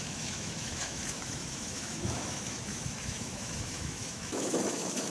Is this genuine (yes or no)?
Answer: no